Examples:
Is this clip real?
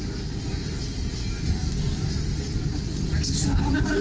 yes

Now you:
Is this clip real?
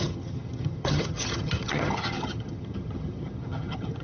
no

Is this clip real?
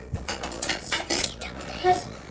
no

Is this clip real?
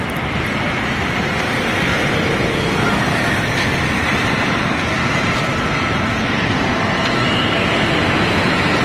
yes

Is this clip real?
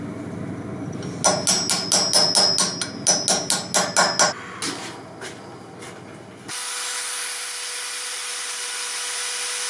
yes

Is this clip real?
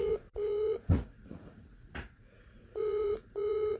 no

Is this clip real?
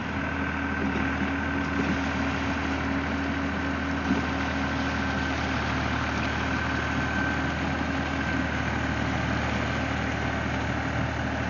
yes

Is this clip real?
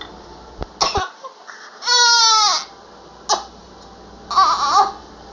yes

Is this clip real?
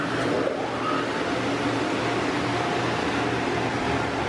yes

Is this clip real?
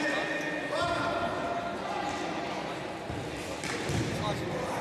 yes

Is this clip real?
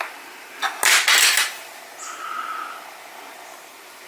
yes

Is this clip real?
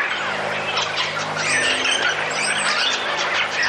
yes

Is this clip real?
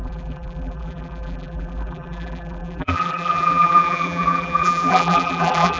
no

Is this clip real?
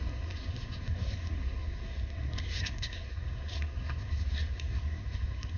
no